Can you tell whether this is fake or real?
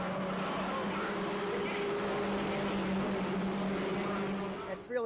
real